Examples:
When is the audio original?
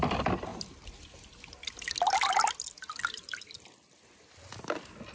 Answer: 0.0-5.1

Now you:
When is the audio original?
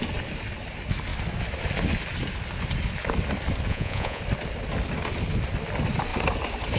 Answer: 0.0-3.7; 4.2-6.8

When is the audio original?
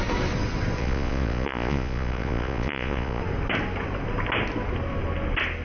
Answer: 0.0-0.8; 3.2-5.6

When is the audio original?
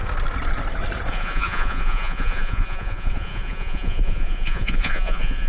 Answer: 0.0-1.1